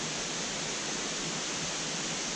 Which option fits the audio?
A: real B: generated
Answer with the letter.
A